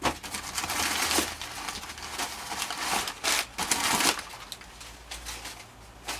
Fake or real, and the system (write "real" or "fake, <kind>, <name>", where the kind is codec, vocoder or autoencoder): real